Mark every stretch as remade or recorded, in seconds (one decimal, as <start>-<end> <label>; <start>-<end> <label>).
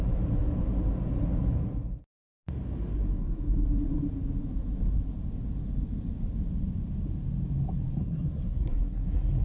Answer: 0.0-8.0 recorded; 8.0-9.4 remade